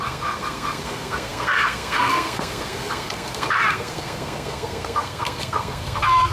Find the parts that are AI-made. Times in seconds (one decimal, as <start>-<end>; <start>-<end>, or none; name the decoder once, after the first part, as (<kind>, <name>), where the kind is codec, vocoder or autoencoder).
0.0-6.3 (codec, SNAC)